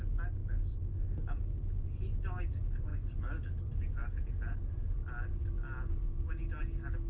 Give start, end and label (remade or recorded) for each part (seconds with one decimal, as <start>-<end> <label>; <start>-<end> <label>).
0.0-7.1 recorded